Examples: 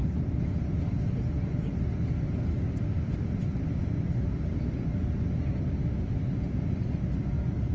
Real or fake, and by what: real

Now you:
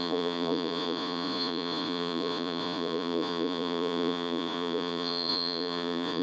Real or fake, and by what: fake, vocoder, Vocos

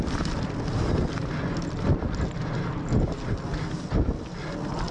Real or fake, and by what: real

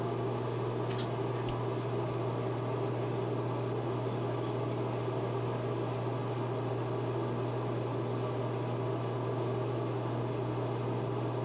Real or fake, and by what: real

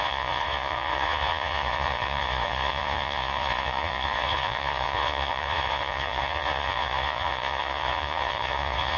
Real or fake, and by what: fake, vocoder, Vocos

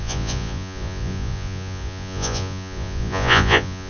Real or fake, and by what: fake, vocoder, Vocos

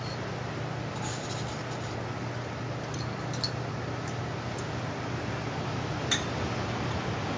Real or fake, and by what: real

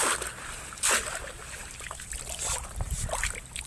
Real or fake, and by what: real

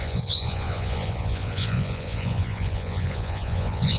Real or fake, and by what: fake, vocoder, Vocos